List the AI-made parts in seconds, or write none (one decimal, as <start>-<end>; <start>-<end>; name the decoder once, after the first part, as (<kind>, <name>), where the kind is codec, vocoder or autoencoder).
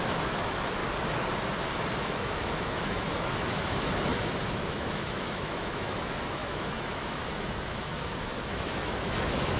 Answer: 0.0-0.8 (autoencoder, DAC-VAE); 2.0-9.6